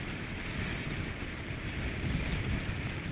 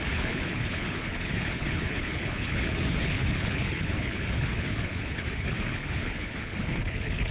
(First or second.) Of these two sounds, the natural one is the first